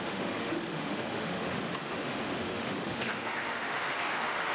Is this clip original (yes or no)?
no